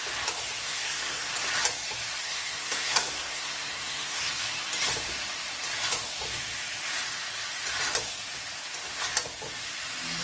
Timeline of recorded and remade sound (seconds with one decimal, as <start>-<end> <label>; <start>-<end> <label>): 0.0-0.6 recorded; 0.6-1.3 remade; 1.3-2.2 recorded; 2.2-4.3 remade; 4.3-10.2 recorded